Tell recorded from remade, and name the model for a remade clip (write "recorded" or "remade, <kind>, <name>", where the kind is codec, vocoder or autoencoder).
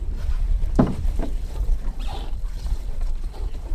remade, vocoder, BigVGAN v2